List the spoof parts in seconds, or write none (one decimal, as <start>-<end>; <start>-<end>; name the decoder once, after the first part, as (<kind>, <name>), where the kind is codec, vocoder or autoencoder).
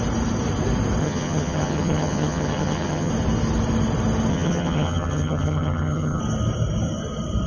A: 1.0-3.1 (vocoder, HiFi-GAN); 4.3-6.2